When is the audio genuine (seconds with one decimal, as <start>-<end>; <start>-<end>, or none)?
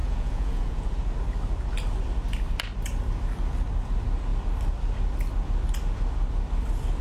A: 0.9-7.0